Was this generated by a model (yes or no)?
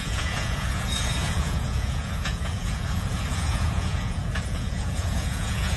yes